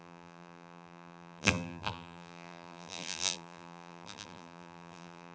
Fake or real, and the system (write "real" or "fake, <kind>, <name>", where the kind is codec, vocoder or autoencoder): fake, vocoder, BigVGAN v2